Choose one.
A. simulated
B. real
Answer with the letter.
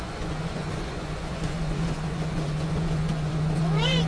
A